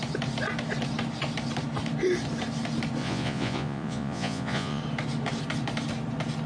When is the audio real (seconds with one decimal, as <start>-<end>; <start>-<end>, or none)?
0.0-3.0; 4.8-6.5